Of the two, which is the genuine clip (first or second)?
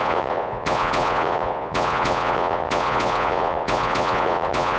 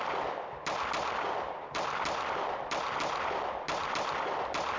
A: second